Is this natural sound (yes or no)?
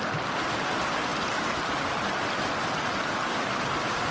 yes